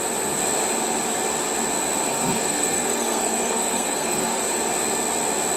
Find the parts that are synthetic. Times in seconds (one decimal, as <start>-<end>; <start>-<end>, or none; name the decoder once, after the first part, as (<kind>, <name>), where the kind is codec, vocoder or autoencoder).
2.1-4.4 (codec, SNAC)